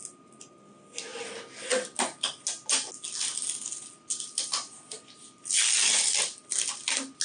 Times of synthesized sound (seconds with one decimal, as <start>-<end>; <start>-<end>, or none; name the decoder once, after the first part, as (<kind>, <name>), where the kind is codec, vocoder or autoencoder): none